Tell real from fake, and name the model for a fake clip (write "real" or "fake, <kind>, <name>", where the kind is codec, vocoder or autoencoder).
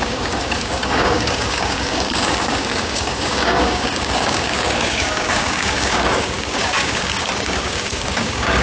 fake, codec, DAC